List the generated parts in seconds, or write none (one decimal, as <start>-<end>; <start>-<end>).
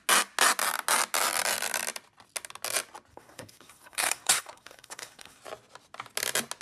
3.1-5.4